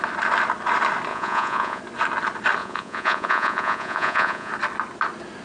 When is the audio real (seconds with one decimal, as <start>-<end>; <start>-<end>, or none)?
0.0-1.1; 1.8-2.6; 4.5-5.4